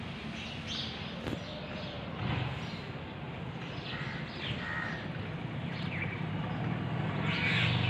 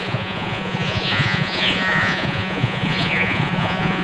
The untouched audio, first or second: first